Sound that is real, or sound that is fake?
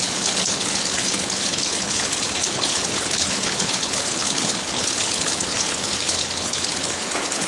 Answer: fake